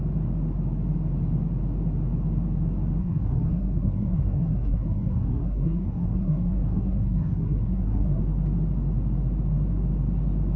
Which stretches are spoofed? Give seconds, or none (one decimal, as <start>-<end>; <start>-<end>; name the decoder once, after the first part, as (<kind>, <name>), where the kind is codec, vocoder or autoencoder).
3.0-8.2 (codec, SNAC)